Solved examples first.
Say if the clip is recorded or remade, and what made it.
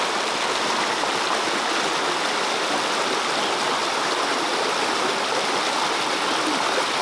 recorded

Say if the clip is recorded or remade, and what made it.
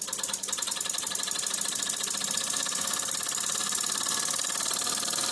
recorded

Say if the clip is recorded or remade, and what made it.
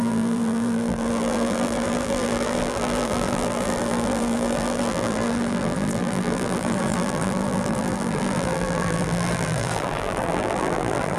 remade, vocoder, BigVGAN v2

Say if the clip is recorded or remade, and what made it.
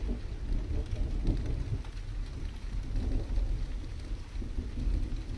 recorded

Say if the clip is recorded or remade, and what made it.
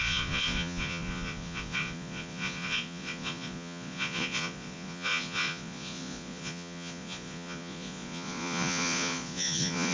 remade, vocoder, Vocos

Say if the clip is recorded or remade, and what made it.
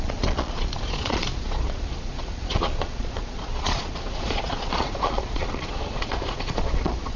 remade, vocoder, Vocos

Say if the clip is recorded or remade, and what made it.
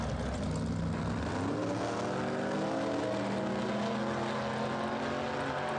recorded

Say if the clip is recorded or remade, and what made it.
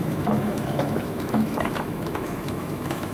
remade, autoencoder, DAC-VAE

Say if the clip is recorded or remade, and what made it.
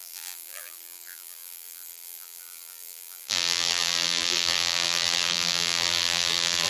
remade, vocoder, BigVGAN v2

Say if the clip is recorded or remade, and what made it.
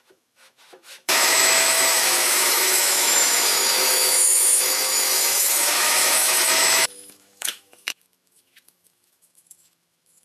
remade, autoencoder, DAC-VAE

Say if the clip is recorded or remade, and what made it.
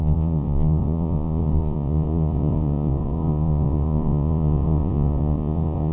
remade, vocoder, Vocos